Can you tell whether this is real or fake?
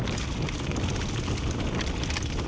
real